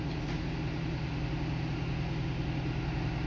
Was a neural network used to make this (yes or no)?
no